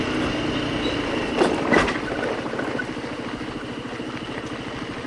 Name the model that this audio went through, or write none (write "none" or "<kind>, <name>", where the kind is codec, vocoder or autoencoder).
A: none